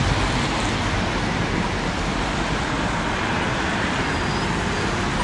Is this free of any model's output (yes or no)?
yes